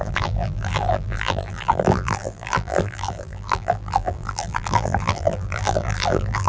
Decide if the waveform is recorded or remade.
remade